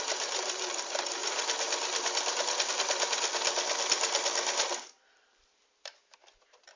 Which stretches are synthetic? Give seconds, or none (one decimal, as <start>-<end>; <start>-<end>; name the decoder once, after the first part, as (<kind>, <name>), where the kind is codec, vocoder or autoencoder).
0.0-6.8 (vocoder, BigVGAN v2)